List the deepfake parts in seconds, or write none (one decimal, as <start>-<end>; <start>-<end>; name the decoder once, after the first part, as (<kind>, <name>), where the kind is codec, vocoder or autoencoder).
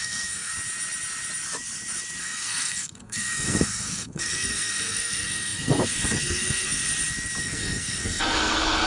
0.0-0.5 (codec, SNAC); 2.2-6.8; 7.4-8.9